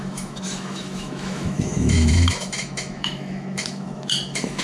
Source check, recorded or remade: remade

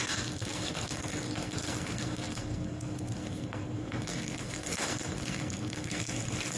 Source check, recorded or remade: remade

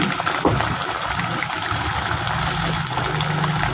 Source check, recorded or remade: recorded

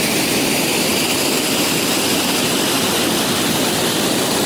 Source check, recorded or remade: recorded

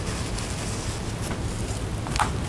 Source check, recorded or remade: recorded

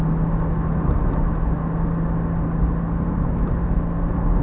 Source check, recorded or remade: recorded